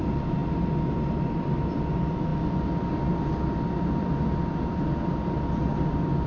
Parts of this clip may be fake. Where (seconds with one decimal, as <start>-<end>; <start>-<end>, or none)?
none